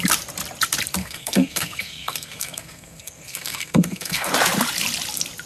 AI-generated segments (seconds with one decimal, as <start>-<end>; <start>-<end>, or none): 1.0-4.3